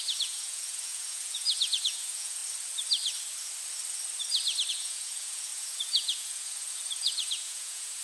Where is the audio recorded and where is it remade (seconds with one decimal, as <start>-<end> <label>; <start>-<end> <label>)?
0.0-2.4 remade; 2.4-4.7 recorded; 4.7-8.0 remade